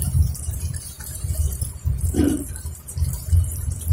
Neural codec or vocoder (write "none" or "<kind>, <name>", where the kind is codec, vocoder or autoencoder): vocoder, BigVGAN v2